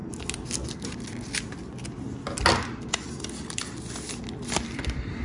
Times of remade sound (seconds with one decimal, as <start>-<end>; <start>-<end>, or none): none